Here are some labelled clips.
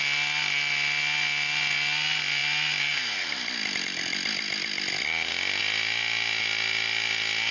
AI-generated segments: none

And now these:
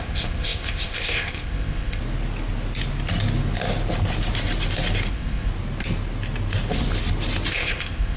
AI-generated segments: 0.0-2.0; 5.1-5.5; 7.5-8.2

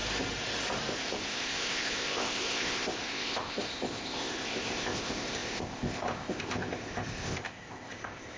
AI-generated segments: 0.9-8.4

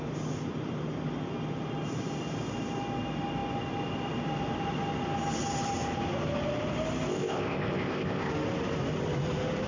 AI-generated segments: 7.1-8.3

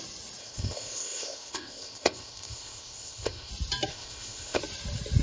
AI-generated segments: 0.4-3.5; 3.9-4.6